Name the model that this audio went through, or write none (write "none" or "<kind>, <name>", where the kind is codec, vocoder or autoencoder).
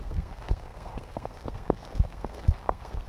codec, SNAC